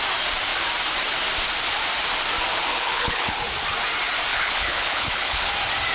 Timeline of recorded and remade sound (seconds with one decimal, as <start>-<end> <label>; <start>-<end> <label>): 0.0-2.5 recorded; 2.5-3.4 remade; 3.4-4.3 recorded; 4.3-5.5 remade; 5.5-5.9 recorded